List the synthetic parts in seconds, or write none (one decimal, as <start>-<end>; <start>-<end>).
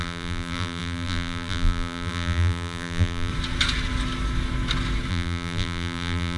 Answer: 0.0-3.3; 5.1-6.4